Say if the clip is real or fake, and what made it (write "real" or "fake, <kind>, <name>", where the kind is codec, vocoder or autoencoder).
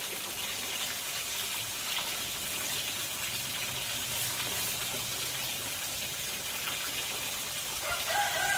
real